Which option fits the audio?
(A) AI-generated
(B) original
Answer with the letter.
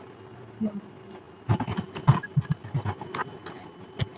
B